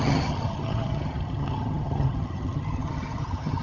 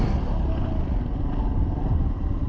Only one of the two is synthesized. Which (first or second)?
first